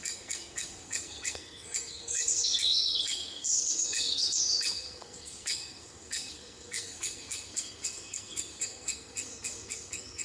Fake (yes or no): yes